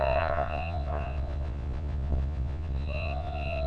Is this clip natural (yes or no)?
no